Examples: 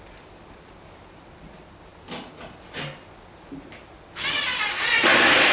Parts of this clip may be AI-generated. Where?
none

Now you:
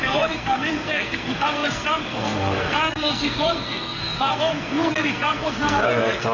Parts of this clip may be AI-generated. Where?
0.0-6.3 (codec, SNAC)